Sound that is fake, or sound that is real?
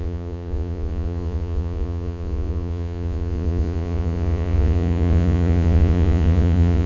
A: fake